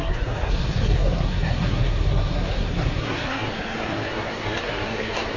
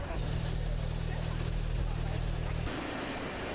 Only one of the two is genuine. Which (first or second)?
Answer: second